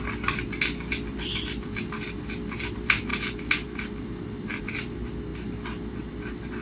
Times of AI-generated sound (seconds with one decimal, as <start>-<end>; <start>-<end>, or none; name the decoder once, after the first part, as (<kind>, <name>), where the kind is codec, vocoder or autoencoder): none